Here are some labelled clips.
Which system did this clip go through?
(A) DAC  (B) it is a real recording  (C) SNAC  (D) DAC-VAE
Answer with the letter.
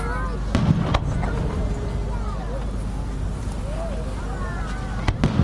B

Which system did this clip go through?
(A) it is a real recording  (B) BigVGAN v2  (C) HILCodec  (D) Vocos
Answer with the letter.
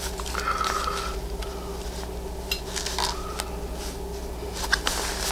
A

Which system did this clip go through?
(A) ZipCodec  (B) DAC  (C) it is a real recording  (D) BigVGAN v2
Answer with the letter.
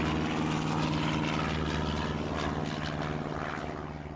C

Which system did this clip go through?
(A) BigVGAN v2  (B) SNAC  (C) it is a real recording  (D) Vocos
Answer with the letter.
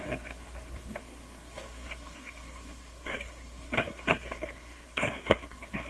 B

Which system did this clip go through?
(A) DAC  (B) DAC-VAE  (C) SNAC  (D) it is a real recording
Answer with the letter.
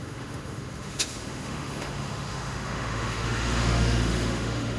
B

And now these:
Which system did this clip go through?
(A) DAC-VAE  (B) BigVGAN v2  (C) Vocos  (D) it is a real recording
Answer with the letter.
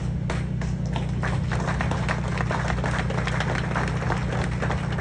D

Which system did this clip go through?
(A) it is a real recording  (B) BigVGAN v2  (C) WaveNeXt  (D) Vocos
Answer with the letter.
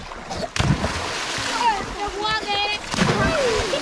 A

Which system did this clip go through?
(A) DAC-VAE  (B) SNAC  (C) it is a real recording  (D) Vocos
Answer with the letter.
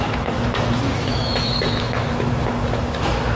A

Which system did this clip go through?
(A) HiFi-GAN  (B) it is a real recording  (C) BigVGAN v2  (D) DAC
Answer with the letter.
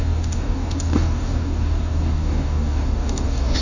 D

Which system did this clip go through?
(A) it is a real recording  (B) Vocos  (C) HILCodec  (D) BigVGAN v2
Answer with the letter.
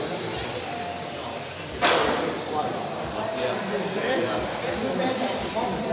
D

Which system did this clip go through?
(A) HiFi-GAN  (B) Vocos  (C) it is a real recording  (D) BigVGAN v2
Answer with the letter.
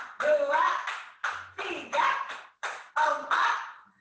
C